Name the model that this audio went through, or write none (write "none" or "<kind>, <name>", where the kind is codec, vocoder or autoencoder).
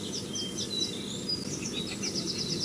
none